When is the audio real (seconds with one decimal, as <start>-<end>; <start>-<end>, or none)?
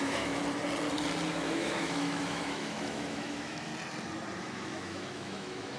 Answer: 0.4-1.3; 3.7-4.4